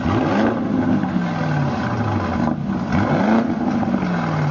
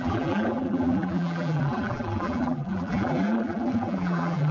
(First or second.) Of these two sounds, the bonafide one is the first